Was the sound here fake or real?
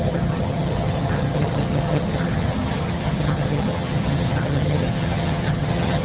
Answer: fake